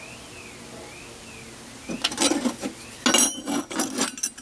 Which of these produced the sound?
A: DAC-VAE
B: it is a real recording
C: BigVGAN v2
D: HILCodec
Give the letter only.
B